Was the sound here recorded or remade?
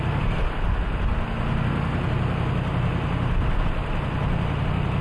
recorded